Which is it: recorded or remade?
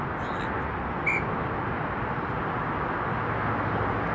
recorded